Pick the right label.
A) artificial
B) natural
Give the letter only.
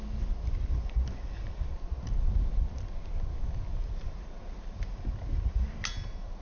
B